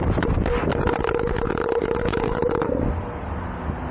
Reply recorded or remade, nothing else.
recorded